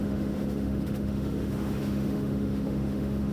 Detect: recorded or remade remade